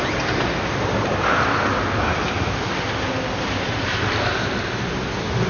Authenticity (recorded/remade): recorded